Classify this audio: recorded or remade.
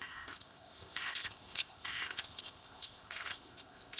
remade